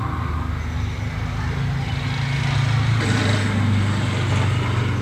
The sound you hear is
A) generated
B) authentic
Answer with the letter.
B